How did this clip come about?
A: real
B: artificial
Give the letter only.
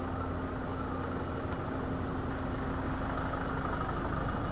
A